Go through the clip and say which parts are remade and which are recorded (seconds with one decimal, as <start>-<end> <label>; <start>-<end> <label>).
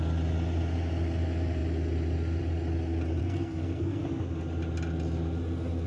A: 0.0-3.2 recorded; 3.2-4.0 remade; 4.0-5.9 recorded